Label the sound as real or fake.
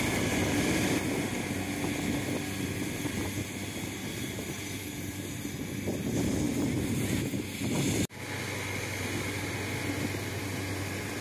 real